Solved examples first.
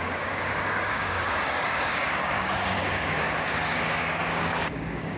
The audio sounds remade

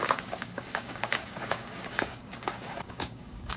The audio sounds remade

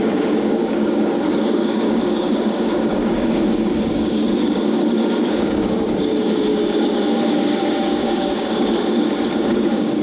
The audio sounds remade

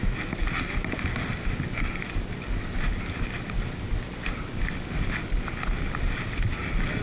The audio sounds recorded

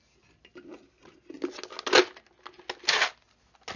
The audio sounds recorded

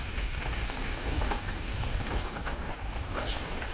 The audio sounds remade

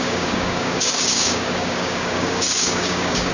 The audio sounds remade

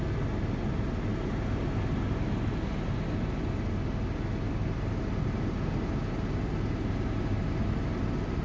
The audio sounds recorded